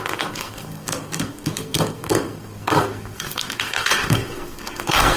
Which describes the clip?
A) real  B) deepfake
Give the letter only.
B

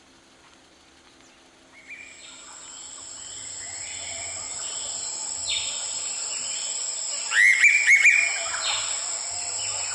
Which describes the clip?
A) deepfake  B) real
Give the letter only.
B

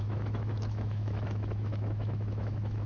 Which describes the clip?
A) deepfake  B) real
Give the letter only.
A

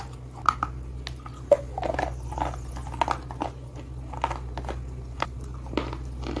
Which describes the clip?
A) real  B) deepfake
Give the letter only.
A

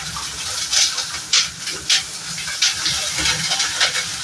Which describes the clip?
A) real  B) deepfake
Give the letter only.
A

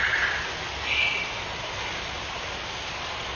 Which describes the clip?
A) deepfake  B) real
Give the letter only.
B